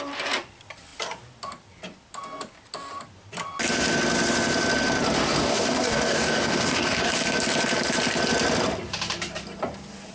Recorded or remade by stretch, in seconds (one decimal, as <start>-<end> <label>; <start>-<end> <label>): 0.0-5.4 recorded; 5.4-7.1 remade; 7.1-10.1 recorded